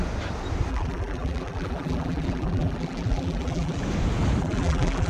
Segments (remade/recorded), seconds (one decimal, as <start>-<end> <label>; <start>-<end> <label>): 0.0-0.7 recorded; 0.7-3.8 remade; 3.8-4.4 recorded; 4.4-5.1 remade